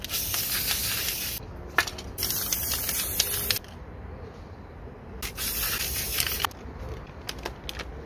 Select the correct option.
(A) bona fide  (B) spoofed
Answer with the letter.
A